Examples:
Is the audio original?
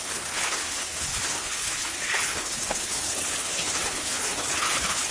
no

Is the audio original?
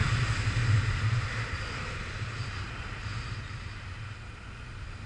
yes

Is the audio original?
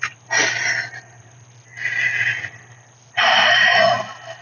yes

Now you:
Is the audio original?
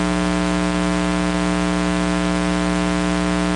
yes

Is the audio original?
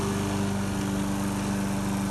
yes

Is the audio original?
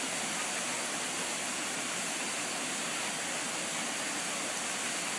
yes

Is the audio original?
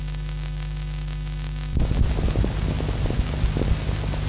yes